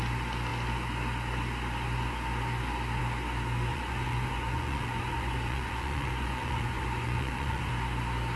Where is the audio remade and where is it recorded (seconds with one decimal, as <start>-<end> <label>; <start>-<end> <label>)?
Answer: 0.0-3.7 recorded; 3.7-7.7 remade; 7.7-8.4 recorded